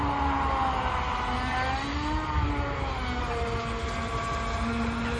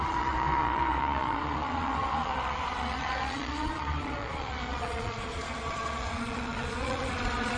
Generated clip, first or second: second